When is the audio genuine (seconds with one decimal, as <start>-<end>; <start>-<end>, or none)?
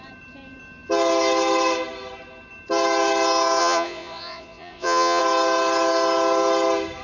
0.0-3.6; 5.2-7.0